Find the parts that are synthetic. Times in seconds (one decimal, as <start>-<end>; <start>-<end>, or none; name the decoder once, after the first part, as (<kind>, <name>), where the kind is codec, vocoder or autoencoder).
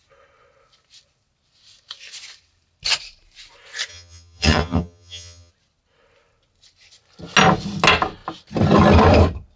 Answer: 3.9-5.5 (vocoder, HiFi-GAN)